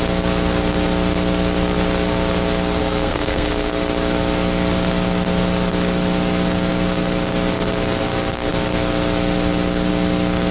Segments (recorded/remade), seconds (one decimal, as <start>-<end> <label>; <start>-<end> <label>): 0.0-2.8 recorded; 2.8-3.7 remade; 3.7-10.5 recorded